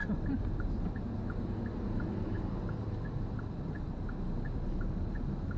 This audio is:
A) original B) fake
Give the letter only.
A